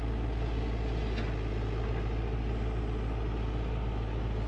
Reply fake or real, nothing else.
real